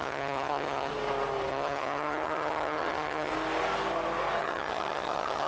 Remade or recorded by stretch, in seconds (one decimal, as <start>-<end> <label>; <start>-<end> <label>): 0.0-0.9 remade; 0.9-1.5 recorded; 1.5-3.3 remade; 3.3-4.4 recorded; 4.4-5.5 remade